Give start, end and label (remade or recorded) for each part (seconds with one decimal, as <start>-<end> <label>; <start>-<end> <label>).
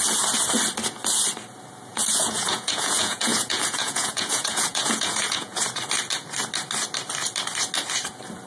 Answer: 0.0-1.9 recorded; 1.9-5.6 remade; 5.6-8.5 recorded